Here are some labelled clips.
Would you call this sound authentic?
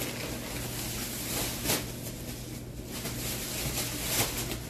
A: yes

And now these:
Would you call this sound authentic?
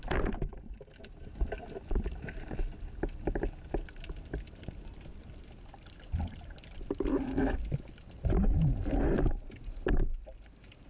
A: yes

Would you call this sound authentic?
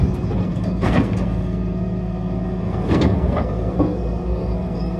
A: no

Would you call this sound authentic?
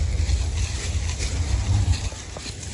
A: yes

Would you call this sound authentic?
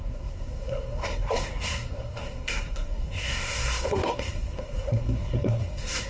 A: no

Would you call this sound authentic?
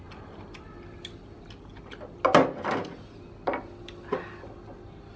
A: yes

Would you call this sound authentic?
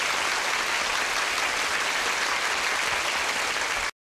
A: yes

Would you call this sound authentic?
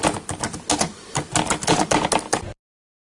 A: yes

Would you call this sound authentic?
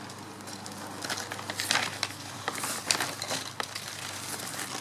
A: yes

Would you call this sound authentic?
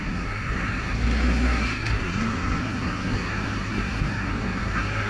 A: no